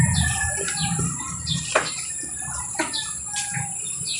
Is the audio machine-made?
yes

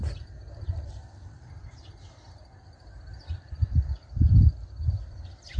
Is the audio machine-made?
yes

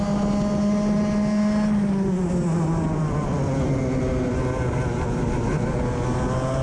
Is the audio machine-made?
no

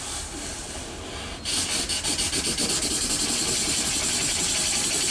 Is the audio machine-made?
yes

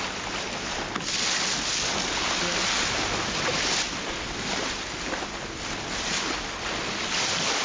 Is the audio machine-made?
no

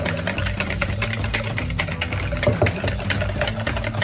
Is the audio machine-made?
no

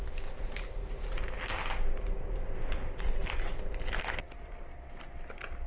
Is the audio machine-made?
no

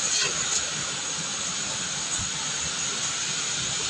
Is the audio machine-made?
no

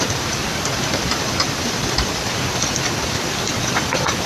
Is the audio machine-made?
yes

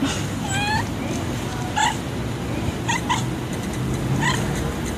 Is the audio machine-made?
no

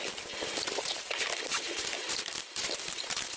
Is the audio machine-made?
yes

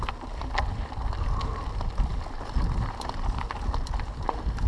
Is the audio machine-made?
no